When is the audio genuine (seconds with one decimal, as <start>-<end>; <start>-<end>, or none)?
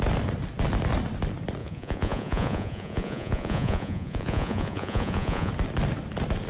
0.0-1.6; 5.5-6.5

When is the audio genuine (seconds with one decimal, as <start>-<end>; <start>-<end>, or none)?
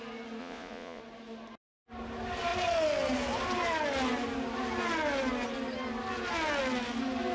0.0-0.4; 1.0-7.3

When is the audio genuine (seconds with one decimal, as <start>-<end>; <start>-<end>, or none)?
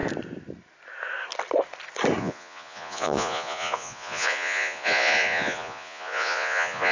0.0-2.2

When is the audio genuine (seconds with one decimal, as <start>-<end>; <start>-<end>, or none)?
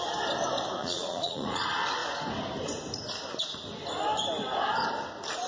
0.0-0.8; 1.6-5.5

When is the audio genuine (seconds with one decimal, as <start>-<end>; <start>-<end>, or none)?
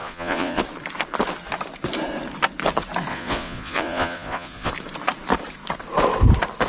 0.6-3.1; 4.7-6.7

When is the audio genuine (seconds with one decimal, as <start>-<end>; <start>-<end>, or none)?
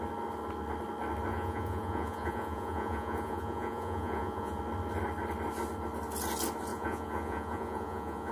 0.0-1.3; 4.6-6.7